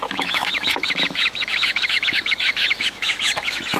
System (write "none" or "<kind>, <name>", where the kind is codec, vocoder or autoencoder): autoencoder, DAC-VAE